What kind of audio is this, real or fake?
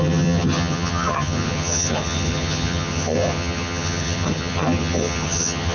fake